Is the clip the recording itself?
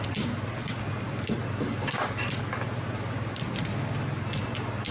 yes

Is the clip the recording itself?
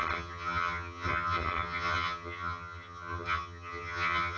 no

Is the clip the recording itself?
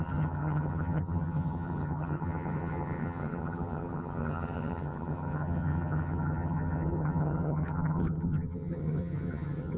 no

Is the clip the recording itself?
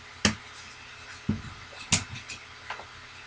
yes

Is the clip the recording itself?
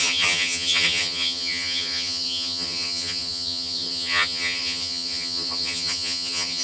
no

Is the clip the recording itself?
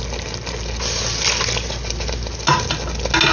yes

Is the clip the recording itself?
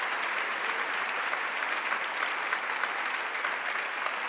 yes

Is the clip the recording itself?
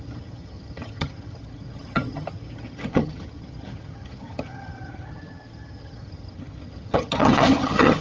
no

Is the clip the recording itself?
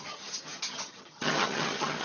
no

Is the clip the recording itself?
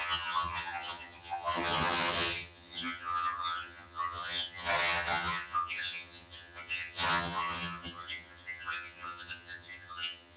no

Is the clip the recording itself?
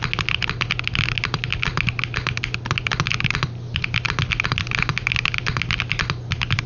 yes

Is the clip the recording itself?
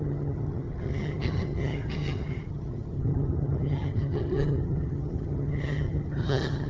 no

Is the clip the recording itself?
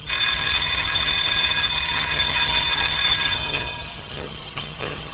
no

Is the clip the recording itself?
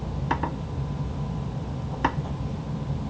yes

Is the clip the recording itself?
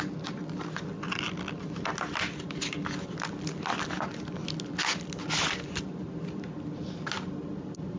yes